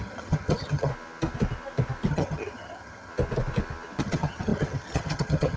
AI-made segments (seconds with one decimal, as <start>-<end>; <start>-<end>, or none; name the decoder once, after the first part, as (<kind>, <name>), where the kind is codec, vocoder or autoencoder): 0.0-0.9 (vocoder, HiFi-GAN); 2.1-3.1; 4.0-5.6

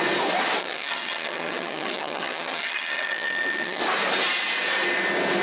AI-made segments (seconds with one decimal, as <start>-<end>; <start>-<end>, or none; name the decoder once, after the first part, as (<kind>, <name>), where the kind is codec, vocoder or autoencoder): 0.6-3.8 (vocoder, HiFi-GAN)